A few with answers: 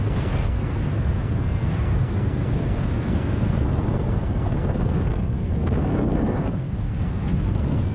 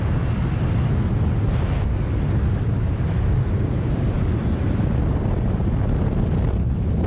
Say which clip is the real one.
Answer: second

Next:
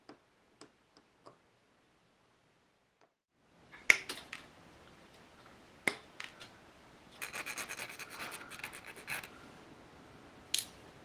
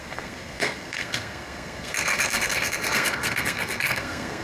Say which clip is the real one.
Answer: first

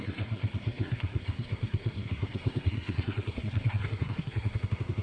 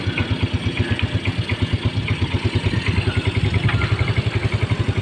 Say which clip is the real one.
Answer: second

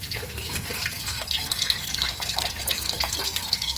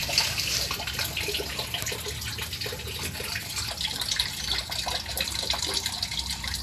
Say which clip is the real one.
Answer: second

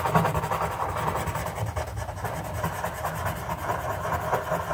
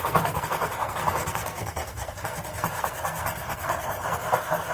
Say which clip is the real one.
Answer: first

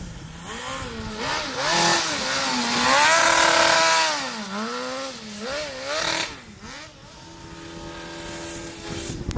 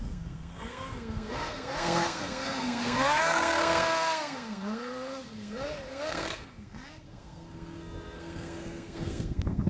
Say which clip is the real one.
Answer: first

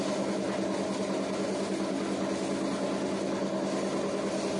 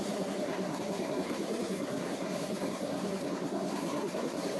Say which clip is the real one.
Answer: first